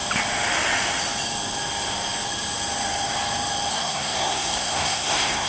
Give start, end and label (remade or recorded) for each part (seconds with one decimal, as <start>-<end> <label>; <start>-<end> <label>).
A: 0.0-3.7 recorded; 3.7-5.5 remade